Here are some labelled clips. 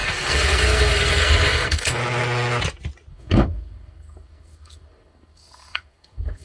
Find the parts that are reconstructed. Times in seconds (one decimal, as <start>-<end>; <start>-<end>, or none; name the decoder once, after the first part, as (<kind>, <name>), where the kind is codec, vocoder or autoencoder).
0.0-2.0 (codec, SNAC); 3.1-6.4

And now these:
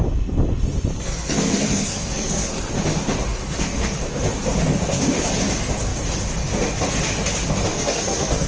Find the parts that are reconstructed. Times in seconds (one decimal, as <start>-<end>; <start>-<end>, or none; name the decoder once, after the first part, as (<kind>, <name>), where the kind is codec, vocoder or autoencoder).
0.9-2.7 (codec, SNAC); 3.3-4.0; 7.7-8.5

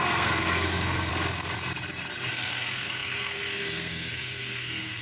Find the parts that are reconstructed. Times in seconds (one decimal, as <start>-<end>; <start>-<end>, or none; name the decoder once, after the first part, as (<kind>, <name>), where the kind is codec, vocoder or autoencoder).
0.0-1.1 (codec, SNAC); 2.3-5.0

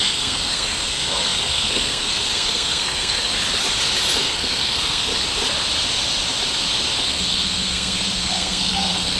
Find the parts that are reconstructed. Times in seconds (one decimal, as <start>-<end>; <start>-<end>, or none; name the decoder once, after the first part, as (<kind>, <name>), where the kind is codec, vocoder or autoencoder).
0.0-3.3 (codec, SNAC); 4.2-5.1; 7.0-9.2